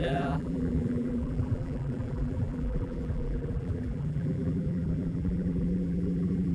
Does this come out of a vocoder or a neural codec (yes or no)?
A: yes